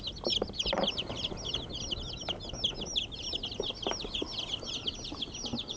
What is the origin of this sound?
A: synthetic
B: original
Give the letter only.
B